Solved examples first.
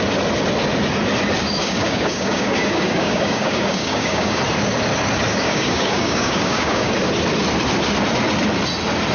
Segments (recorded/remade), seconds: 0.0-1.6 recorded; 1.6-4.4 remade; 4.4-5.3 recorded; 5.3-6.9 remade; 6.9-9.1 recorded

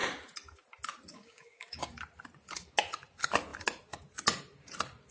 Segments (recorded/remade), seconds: 0.0-1.1 recorded; 1.1-1.9 remade; 1.9-5.1 recorded

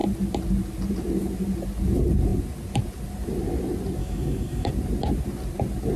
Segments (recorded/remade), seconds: 0.0-4.0 recorded; 4.0-4.7 remade; 4.7-6.0 recorded

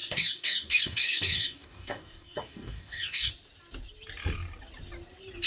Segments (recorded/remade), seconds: 0.0-3.3 remade; 3.3-5.5 recorded

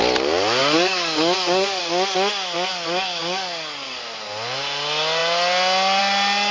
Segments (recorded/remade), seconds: 0.0-0.6 recorded; 0.6-1.8 remade; 1.8-2.7 recorded; 2.7-4.0 remade; 4.0-6.5 recorded

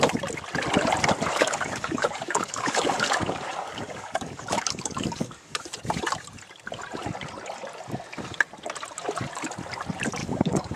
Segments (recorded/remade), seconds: 0.0-1.3 recorded; 1.3-5.6 remade; 5.6-10.2 recorded; 10.2-10.8 remade

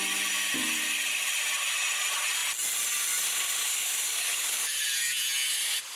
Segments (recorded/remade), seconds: 0.0-3.6 recorded; 3.6-4.7 remade; 4.7-6.0 recorded